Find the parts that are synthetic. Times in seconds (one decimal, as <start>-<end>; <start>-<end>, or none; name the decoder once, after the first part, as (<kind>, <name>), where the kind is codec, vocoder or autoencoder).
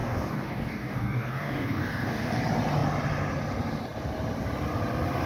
0.0-2.4 (codec, DAC)